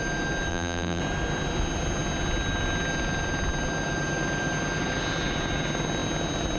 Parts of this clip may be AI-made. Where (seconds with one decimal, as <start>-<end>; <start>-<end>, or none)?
0.5-1.0